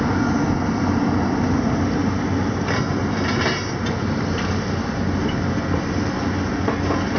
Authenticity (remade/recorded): recorded